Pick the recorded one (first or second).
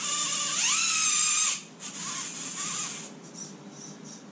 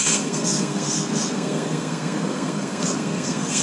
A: first